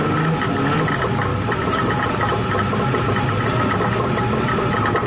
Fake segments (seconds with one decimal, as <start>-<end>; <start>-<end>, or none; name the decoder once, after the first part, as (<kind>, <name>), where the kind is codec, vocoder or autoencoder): none